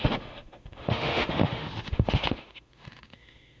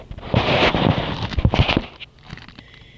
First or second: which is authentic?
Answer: second